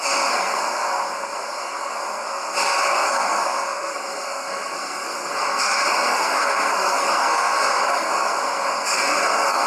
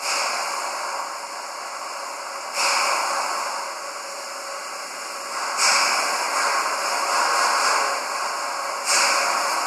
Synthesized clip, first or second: first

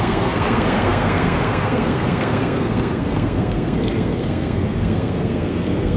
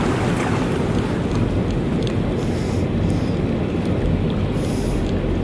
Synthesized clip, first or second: first